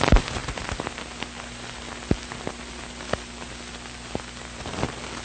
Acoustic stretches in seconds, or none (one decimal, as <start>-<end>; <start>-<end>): 0.0-5.2